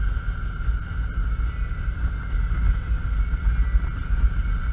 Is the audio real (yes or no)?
yes